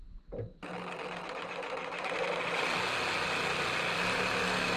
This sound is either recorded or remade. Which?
recorded